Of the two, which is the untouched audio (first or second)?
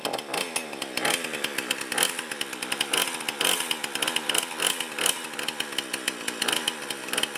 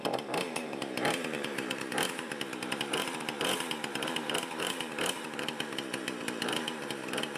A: first